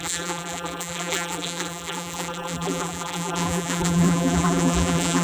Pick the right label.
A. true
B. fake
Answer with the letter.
B